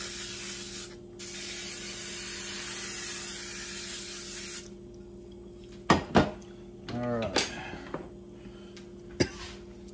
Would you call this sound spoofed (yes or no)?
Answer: no